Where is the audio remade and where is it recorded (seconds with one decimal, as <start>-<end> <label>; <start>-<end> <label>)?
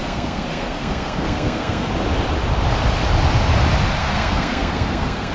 0.0-1.9 remade; 1.9-4.0 recorded; 4.0-5.3 remade